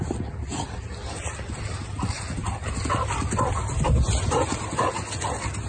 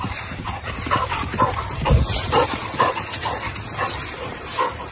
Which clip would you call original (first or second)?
first